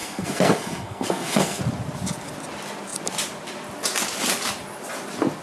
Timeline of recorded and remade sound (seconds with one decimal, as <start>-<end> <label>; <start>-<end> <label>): 0.0-1.6 remade; 1.6-5.4 recorded